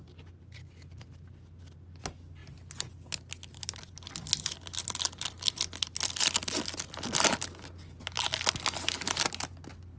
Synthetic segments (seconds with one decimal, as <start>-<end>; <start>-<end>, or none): none